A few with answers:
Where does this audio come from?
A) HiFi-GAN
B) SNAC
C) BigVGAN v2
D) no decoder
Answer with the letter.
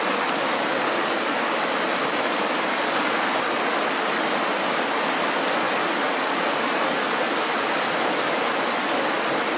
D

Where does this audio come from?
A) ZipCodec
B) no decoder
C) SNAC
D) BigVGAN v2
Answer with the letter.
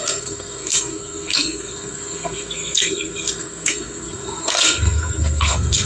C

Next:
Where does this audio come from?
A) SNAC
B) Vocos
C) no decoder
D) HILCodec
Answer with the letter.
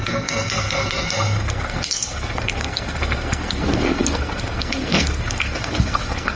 A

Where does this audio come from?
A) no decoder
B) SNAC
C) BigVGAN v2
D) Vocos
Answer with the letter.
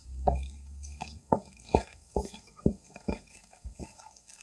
B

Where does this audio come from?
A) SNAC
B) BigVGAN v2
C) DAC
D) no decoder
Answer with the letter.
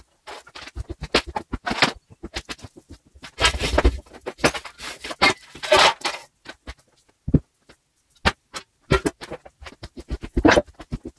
D